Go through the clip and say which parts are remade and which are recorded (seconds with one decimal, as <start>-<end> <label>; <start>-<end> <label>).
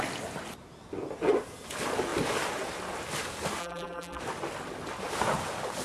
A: 0.0-3.6 recorded; 3.6-4.2 remade; 4.2-5.8 recorded